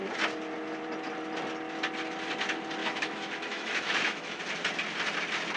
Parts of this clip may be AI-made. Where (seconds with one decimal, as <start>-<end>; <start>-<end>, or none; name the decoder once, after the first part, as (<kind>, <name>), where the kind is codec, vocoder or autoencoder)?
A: 2.8-4.4 (autoencoder, DAC-VAE)